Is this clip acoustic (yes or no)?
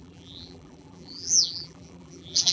no